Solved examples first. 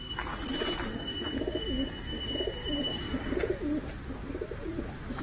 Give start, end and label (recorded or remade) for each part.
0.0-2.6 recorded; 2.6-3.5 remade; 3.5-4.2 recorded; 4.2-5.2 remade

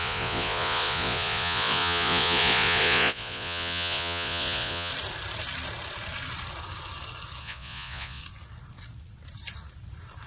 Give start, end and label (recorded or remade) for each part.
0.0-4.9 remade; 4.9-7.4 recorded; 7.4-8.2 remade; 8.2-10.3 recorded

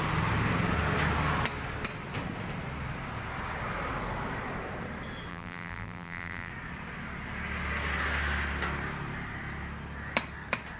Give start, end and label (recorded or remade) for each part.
0.0-5.3 recorded; 5.3-6.5 remade; 6.5-10.8 recorded

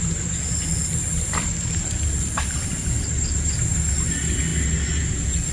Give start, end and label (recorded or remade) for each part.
0.0-5.5 recorded

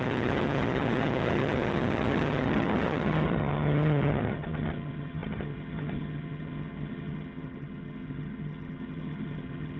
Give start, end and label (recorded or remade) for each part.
0.0-9.8 remade